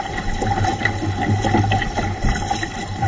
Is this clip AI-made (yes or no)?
yes